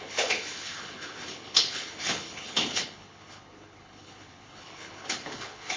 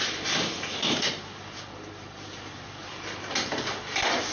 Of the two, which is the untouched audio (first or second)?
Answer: second